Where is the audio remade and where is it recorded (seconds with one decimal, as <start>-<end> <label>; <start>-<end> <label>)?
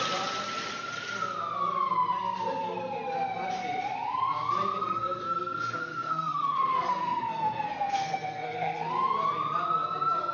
0.0-4.8 recorded; 4.8-8.9 remade; 8.9-10.3 recorded